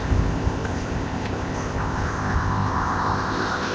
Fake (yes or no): yes